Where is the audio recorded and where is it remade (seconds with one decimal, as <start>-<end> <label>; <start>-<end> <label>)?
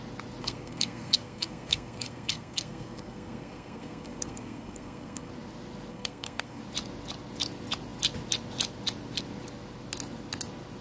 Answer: 0.0-0.4 recorded; 0.4-5.3 remade; 5.3-5.9 recorded; 5.9-6.6 remade; 6.6-10.8 recorded